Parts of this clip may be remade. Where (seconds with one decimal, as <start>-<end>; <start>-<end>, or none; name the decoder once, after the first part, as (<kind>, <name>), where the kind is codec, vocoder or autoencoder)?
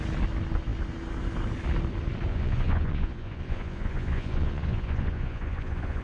2.3-6.0 (vocoder, Vocos)